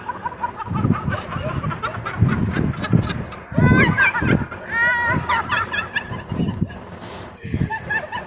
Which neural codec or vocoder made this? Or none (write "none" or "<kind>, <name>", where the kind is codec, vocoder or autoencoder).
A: none